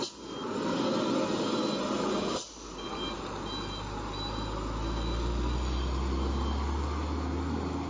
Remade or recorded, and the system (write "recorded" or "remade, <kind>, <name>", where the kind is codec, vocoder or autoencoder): recorded